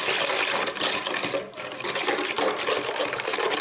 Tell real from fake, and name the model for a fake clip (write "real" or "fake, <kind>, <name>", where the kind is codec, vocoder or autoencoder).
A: real